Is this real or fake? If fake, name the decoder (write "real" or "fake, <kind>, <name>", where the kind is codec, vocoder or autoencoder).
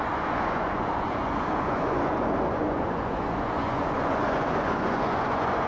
fake, vocoder, Vocos